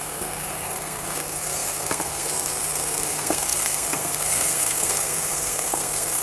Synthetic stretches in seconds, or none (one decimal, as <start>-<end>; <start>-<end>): 0.0-6.2